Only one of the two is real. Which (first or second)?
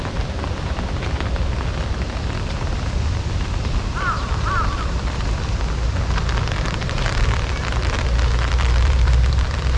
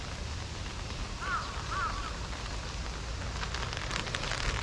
second